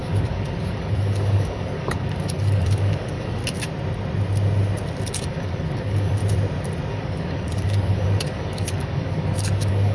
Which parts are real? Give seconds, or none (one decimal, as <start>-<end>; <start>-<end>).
3.4-5.1; 6.2-6.9